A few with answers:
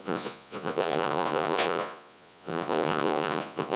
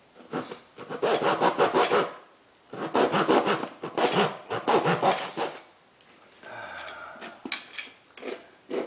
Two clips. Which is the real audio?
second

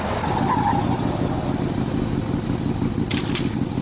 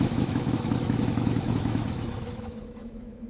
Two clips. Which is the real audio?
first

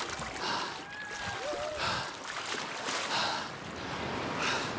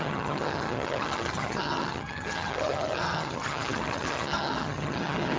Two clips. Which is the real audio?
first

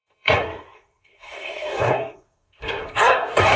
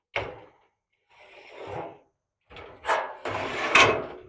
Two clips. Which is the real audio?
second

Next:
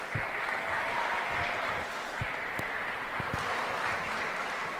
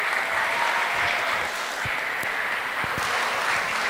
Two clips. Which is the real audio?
second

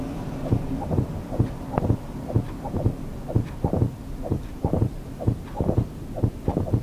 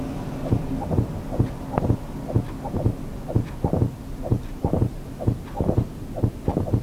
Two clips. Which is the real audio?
second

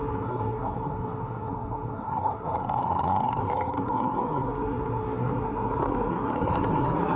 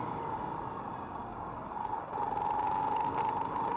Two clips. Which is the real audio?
second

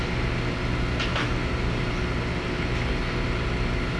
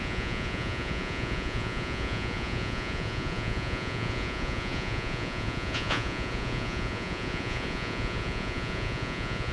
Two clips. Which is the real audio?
first